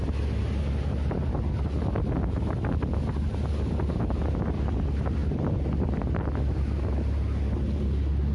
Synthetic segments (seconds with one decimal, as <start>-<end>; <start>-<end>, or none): none